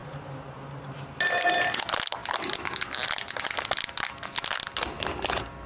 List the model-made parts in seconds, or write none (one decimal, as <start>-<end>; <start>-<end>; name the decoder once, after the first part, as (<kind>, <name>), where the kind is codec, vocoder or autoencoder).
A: 0.0-0.8 (vocoder, BigVGAN v2)